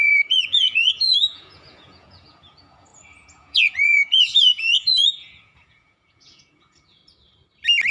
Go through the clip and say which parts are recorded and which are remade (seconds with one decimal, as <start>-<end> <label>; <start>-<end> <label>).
0.0-7.0 remade; 7.0-7.9 recorded